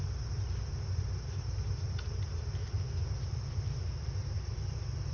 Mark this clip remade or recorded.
remade